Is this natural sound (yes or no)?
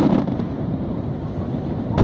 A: yes